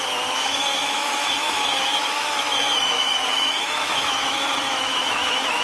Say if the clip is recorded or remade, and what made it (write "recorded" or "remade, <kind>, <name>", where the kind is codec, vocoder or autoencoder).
remade, autoencoder, DAC-VAE